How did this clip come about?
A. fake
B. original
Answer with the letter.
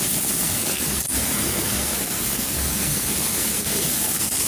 A